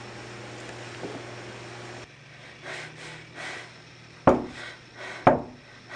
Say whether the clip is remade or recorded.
recorded